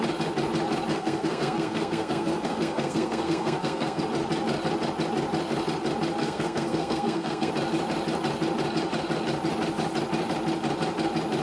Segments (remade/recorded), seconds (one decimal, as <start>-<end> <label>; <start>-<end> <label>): 0.0-0.9 recorded; 0.9-4.0 remade; 4.0-6.2 recorded; 6.2-7.5 remade; 7.5-11.4 recorded